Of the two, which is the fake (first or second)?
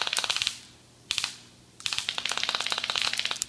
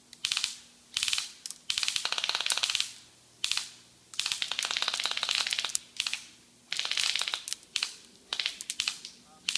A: first